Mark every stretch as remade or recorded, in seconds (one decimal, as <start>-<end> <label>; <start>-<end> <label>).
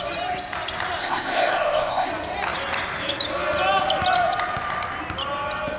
0.0-1.0 recorded; 1.0-2.1 remade; 2.1-5.8 recorded